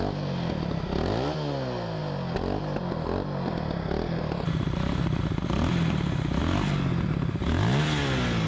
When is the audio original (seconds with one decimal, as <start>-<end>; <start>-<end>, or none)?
0.0-8.5